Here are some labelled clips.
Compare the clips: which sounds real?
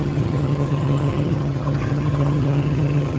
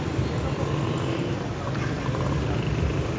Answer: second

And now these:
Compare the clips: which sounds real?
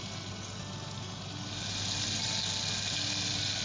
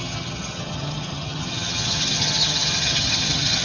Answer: first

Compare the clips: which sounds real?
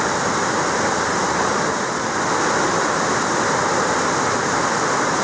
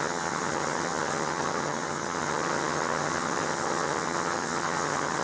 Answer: first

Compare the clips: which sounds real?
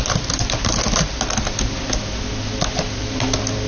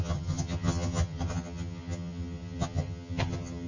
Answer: first